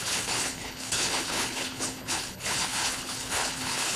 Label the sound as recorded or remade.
remade